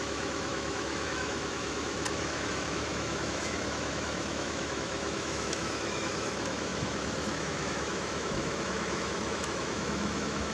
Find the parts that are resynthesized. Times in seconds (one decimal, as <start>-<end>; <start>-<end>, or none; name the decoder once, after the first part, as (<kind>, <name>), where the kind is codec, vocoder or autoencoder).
0.0-10.5 (autoencoder, DAC-VAE)